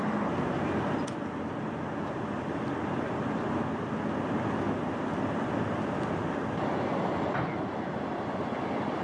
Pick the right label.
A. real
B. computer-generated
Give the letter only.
A